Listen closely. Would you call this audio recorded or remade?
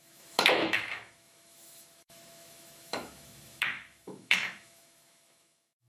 remade